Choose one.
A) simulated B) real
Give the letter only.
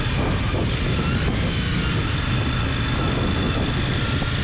B